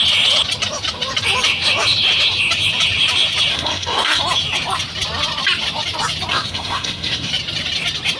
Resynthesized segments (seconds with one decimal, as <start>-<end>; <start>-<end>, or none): 3.5-4.2; 6.3-7.3